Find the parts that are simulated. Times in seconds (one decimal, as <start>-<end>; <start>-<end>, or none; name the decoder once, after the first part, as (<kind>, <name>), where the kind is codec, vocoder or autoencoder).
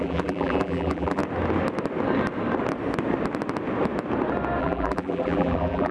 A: 0.0-1.2 (vocoder, BigVGAN v2); 4.6-5.9